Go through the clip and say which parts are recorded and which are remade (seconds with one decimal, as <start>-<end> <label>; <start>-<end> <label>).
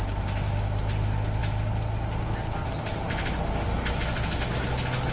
0.0-5.1 recorded